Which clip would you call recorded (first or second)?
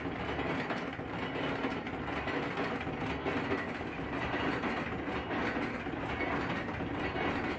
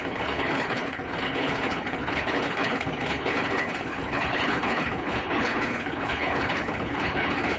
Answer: first